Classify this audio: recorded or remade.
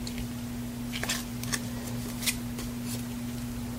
recorded